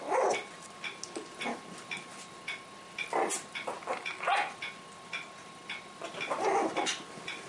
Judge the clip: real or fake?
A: real